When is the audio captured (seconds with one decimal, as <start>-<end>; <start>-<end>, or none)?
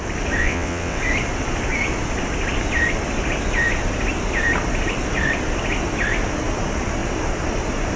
0.0-0.4; 1.0-8.0